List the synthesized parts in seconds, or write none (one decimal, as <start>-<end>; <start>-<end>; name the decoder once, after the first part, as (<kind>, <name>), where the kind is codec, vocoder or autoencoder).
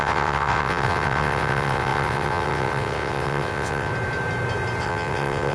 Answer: 0.0-3.9 (vocoder, WaveNeXt); 4.8-5.5